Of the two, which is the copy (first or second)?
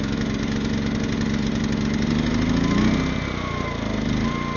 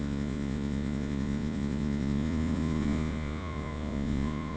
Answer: second